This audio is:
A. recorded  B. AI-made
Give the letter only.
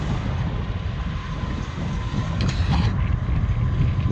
A